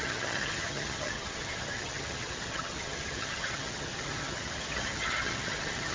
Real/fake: fake